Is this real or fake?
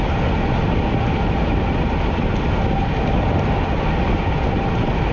real